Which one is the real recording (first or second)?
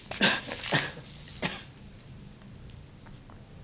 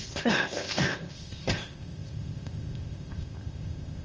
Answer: first